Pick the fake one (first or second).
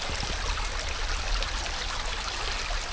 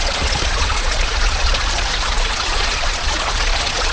second